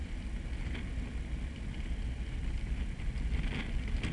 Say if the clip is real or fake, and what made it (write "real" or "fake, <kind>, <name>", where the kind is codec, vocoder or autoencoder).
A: real